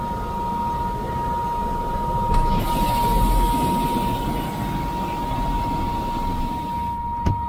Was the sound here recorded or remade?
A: recorded